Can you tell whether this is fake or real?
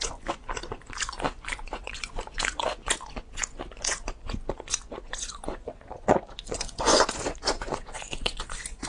fake